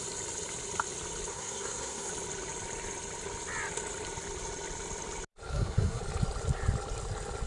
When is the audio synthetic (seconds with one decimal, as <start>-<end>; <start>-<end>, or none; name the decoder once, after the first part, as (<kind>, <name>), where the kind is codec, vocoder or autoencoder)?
1.3-2.1 (codec, SNAC); 5.5-6.0